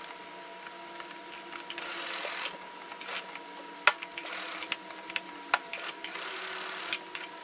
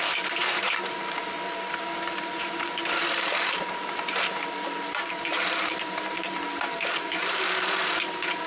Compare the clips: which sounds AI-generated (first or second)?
second